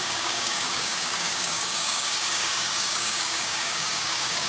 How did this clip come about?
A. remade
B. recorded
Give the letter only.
A